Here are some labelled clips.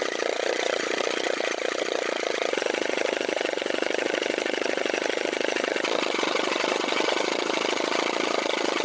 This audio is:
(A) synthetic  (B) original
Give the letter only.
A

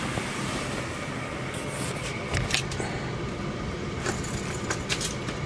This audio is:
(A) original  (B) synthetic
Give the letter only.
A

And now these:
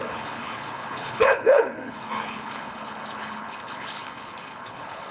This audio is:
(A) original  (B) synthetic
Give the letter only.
B